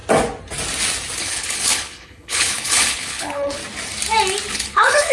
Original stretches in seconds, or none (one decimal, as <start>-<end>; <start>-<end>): 0.0-1.2; 3.6-4.5